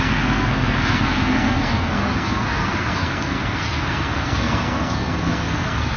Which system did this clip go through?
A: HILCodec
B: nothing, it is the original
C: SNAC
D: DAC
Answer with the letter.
C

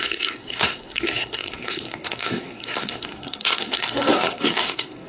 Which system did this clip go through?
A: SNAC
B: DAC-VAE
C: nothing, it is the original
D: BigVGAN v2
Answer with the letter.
A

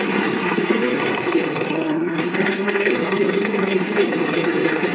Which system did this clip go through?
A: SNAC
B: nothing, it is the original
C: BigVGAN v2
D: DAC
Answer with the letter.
A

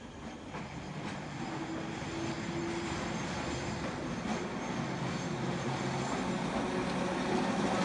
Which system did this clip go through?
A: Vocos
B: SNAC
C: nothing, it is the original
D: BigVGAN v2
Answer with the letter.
C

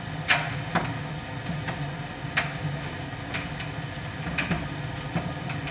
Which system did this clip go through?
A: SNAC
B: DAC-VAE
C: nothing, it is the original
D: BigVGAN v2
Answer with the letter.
C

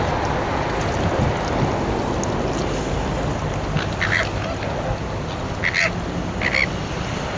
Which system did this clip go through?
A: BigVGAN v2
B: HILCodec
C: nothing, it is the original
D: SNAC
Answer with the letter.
C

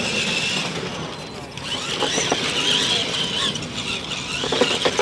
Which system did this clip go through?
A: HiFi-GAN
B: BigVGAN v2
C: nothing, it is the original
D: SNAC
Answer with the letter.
C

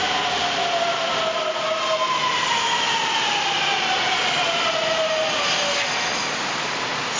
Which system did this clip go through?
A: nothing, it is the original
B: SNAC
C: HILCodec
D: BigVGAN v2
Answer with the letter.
A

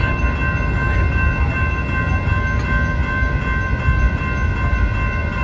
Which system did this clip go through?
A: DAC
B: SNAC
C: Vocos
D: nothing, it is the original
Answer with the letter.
D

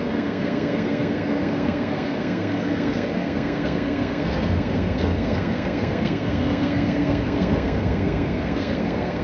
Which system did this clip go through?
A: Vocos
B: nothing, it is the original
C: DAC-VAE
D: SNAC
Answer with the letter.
D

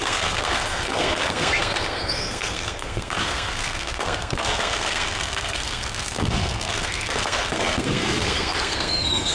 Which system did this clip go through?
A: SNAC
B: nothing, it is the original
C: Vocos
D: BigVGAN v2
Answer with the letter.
A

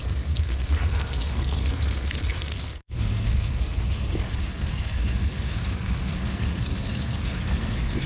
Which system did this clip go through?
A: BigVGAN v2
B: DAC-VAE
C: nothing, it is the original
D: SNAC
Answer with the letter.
D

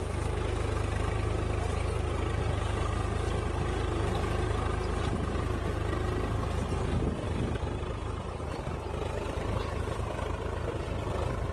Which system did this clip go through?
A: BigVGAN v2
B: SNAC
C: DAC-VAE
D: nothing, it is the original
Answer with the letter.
D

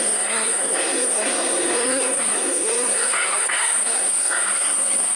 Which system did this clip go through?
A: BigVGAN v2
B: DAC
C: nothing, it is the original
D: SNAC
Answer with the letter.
D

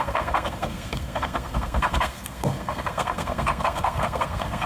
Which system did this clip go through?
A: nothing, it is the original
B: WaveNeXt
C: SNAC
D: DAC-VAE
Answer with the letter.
C